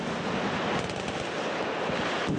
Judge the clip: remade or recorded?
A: recorded